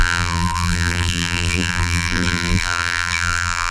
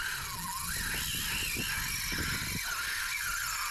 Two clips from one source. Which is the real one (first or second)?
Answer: second